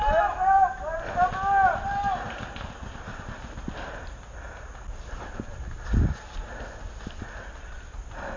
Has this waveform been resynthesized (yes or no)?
no